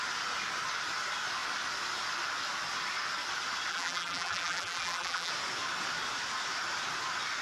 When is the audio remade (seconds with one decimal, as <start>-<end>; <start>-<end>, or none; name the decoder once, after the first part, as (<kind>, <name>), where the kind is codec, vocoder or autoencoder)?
3.7-5.3 (vocoder, BigVGAN v2)